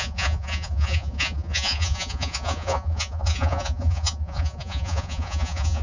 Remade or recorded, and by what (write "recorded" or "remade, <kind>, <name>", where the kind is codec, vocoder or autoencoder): remade, vocoder, Vocos